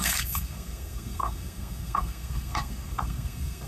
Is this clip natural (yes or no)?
no